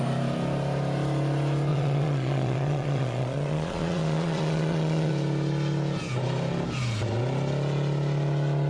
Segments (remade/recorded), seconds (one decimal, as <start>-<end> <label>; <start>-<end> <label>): 0.0-1.7 recorded; 1.7-5.1 remade; 5.1-8.7 recorded